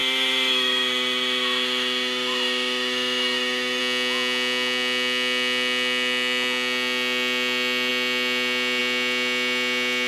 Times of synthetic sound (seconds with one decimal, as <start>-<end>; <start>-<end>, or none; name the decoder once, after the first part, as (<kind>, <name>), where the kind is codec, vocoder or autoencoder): 0.0-3.8 (autoencoder, DAC-VAE)